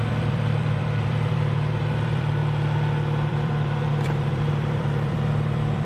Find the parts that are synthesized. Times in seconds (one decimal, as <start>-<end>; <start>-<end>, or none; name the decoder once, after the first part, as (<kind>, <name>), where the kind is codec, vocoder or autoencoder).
0.0-2.4 (vocoder, BigVGAN v2); 3.3-5.8